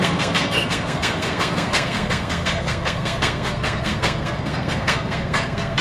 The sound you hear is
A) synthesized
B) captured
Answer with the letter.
A